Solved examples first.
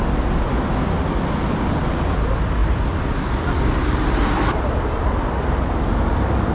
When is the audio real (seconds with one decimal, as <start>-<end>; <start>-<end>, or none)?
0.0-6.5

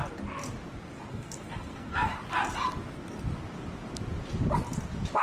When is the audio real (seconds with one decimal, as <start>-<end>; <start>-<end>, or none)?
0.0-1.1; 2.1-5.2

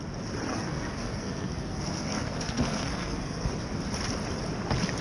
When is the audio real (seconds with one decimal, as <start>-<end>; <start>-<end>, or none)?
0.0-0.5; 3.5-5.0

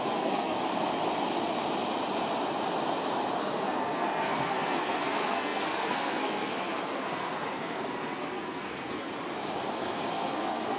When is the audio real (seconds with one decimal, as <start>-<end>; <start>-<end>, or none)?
0.6-3.4; 9.1-9.7